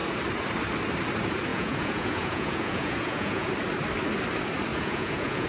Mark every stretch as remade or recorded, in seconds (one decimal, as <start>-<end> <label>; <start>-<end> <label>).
0.0-1.5 recorded; 1.5-3.5 remade; 3.5-4.7 recorded; 4.7-5.5 remade